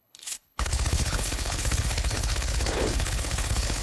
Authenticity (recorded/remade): remade